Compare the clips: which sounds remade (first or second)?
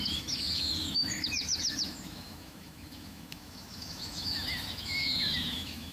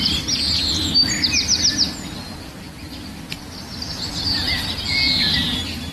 first